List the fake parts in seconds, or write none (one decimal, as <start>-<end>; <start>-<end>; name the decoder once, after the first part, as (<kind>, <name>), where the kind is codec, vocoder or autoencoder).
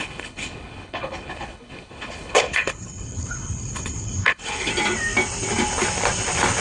0.0-4.7 (codec, HILCodec)